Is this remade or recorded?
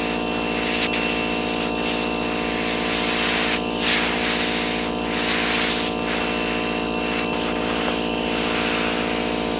recorded